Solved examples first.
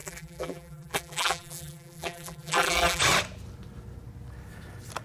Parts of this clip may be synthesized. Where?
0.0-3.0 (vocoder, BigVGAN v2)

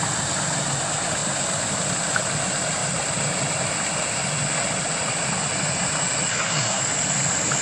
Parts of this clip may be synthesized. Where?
6.3-6.8 (codec, SNAC)

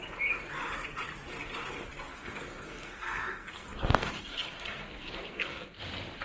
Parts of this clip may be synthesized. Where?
2.1-5.8 (codec, SNAC)

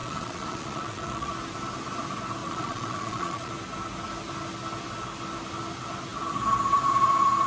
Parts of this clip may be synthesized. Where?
0.0-1.3 (vocoder, Vocos); 2.4-3.5

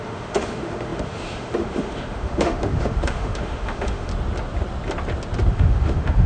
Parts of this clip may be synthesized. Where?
0.0-4.1 (autoencoder, DAC-VAE); 5.5-6.3

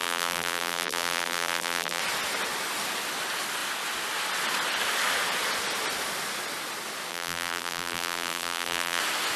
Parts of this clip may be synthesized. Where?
0.0-2.0 (vocoder, BigVGAN v2); 7.1-9.0

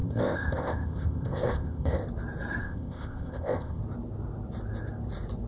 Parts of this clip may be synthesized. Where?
0.0-2.0 (codec, ZipCodec); 2.6-3.8